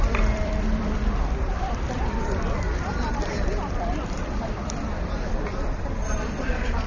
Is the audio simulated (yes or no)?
yes